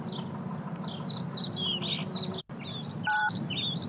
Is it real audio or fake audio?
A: real